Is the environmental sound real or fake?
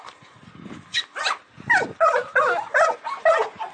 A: real